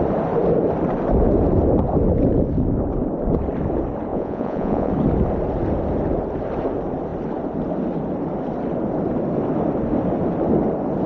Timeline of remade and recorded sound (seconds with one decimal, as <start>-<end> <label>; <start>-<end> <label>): 0.0-4.1 recorded; 4.1-4.9 remade; 4.9-11.1 recorded